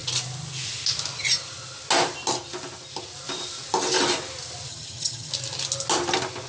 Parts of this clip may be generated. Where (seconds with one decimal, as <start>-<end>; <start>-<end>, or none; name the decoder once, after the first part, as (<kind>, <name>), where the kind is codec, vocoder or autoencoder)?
4.7-5.3 (vocoder, HiFi-GAN)